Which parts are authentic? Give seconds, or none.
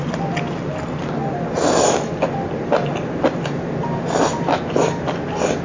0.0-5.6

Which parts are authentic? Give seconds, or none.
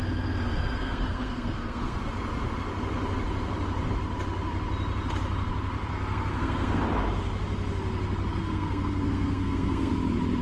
0.0-0.6; 2.0-5.9; 6.8-8.4; 9.9-10.4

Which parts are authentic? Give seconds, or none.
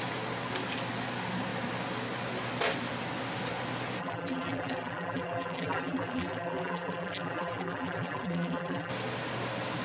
0.0-4.0; 8.9-9.8